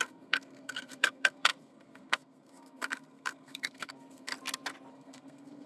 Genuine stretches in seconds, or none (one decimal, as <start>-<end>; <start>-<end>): 4.3-4.9